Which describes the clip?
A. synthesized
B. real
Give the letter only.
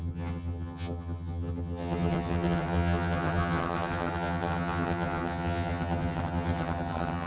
A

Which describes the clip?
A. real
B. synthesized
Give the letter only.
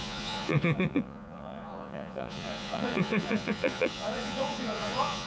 B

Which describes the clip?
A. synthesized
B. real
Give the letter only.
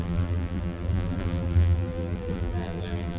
A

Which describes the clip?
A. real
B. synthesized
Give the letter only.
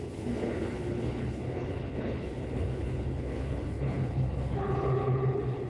B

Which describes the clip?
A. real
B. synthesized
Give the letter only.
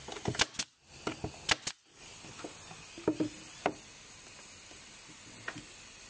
A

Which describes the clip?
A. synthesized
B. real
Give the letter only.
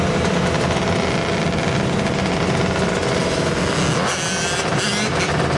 B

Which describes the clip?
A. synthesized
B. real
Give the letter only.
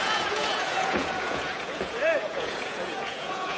A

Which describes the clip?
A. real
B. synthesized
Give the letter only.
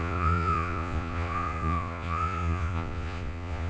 B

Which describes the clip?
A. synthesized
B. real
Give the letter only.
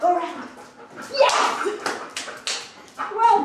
B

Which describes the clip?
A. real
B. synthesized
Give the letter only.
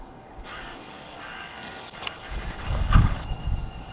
B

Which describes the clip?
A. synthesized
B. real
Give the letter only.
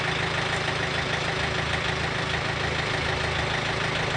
B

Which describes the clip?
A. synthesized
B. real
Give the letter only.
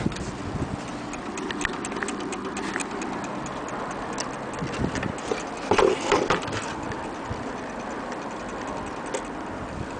B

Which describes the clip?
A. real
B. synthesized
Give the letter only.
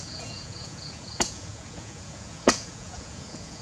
B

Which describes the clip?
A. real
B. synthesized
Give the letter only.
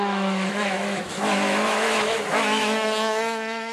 B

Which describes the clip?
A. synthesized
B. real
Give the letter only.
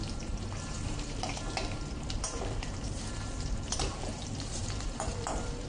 A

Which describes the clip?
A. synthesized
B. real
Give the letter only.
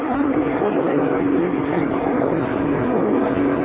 A